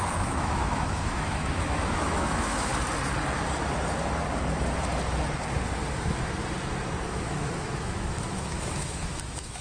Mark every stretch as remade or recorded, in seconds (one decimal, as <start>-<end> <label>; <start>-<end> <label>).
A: 0.0-2.7 remade; 2.7-7.1 recorded; 7.1-9.6 remade